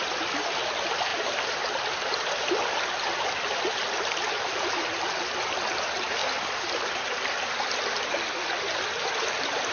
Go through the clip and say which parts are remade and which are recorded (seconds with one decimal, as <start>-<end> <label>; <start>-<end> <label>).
0.0-9.7 recorded